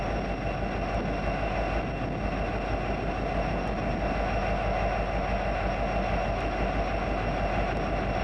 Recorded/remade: recorded